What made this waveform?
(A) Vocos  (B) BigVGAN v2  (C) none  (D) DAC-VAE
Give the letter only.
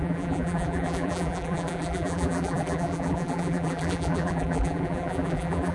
B